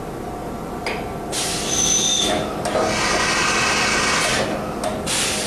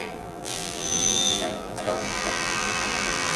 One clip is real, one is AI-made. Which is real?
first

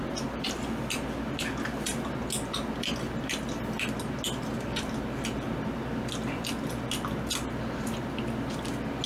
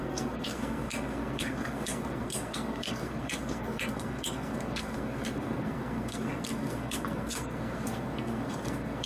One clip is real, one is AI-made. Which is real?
first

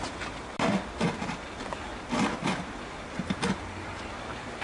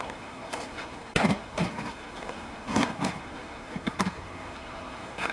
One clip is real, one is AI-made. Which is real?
first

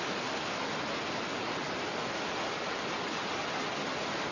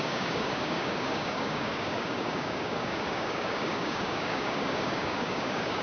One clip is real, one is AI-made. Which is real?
first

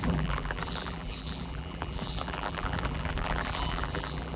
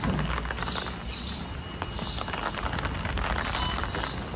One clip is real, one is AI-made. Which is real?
second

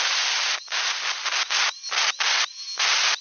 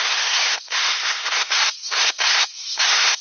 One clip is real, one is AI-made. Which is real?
first